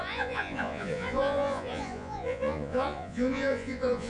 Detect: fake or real fake